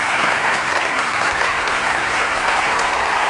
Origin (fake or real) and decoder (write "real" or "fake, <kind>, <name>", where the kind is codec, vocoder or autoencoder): fake, codec, SNAC